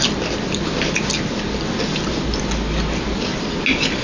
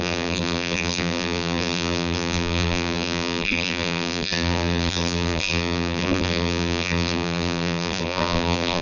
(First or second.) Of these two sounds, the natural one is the first